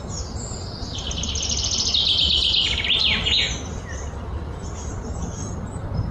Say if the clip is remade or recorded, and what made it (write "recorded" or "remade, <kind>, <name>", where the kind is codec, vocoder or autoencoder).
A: recorded